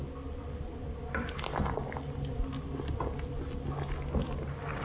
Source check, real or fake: real